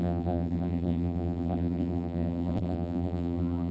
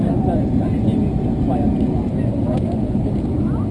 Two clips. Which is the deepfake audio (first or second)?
first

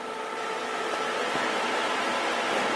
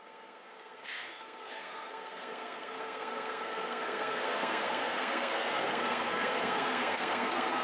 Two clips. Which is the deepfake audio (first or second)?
second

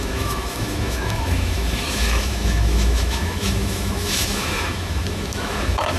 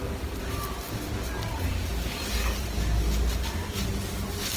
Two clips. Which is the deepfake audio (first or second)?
first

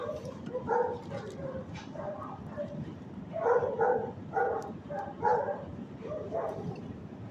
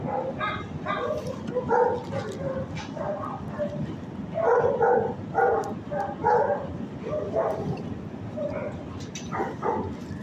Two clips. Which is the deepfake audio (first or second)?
first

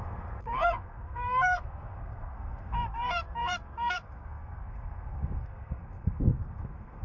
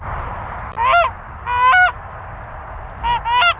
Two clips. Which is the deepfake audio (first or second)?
first